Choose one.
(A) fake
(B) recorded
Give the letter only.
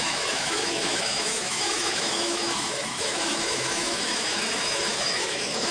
A